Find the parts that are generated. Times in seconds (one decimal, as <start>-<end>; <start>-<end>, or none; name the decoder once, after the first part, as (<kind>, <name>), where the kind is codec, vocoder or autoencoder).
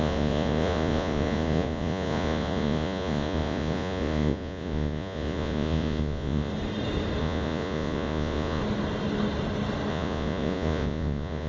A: 0.0-6.5 (vocoder, Vocos); 7.2-8.6; 9.9-11.5